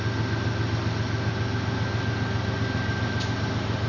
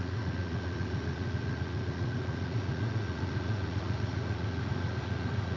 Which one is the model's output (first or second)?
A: second